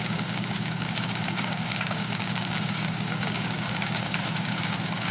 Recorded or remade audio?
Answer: remade